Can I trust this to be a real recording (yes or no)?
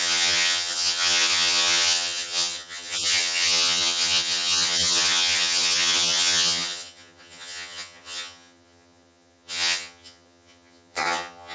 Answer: no